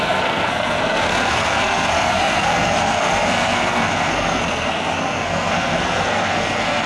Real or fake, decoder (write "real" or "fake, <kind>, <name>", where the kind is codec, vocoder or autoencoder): fake, codec, SNAC